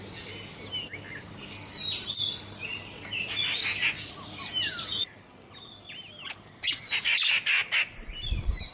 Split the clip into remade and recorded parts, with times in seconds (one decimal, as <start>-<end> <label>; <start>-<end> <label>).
0.0-8.7 recorded